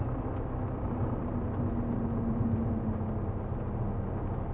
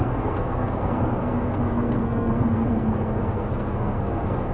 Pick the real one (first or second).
first